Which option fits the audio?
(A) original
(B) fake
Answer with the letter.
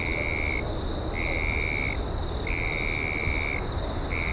A